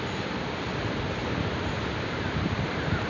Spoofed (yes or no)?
yes